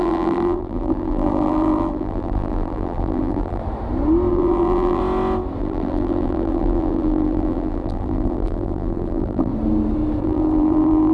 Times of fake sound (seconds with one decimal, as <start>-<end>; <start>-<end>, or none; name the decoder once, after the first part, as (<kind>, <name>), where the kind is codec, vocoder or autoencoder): 0.0-3.6 (vocoder, BigVGAN v2); 4.3-5.0; 5.6-9.5; 10.2-11.1